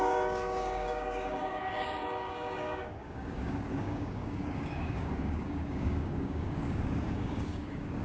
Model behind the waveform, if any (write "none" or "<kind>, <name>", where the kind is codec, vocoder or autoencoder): codec, DAC